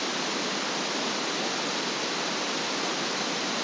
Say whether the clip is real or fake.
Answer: real